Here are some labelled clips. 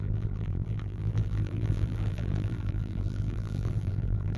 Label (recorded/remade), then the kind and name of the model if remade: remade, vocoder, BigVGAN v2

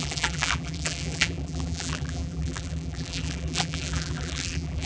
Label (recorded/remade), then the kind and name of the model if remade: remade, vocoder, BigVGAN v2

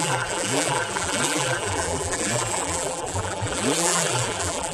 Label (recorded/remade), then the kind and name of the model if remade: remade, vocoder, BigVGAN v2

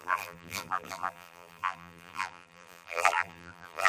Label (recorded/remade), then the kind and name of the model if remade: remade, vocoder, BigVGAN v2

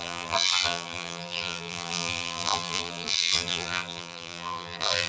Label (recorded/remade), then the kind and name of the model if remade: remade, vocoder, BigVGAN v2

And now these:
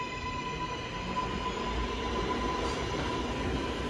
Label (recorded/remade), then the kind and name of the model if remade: recorded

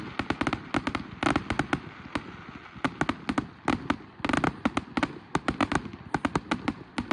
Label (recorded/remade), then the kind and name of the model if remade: recorded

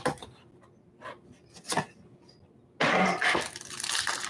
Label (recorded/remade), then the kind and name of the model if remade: recorded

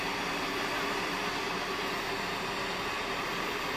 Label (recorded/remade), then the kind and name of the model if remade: recorded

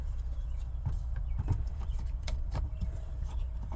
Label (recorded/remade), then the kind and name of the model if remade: remade, vocoder, BigVGAN v2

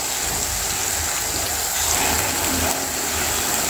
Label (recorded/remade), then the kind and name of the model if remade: recorded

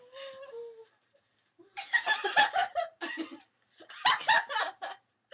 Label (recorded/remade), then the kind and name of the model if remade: remade, vocoder, BigVGAN v2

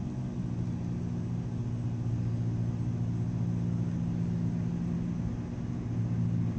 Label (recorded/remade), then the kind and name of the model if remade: recorded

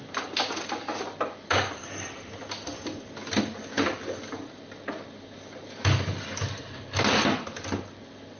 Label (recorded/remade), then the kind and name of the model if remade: recorded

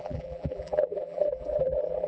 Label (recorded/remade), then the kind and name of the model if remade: remade, vocoder, BigVGAN v2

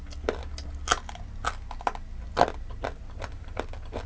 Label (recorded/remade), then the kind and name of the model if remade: recorded